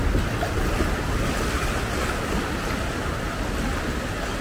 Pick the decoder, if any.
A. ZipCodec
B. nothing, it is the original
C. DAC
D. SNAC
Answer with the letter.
B